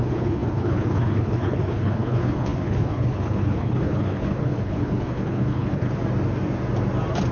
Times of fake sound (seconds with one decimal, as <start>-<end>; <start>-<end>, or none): 0.0-5.9